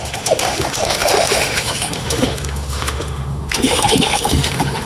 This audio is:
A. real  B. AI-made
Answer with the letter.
B